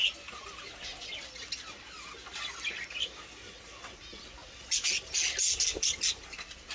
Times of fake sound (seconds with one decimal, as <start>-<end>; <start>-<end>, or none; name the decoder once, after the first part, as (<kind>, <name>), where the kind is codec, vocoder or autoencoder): none